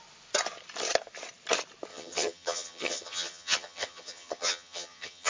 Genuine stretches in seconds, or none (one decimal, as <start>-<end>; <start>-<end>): 0.0-1.9